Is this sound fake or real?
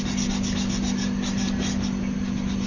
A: real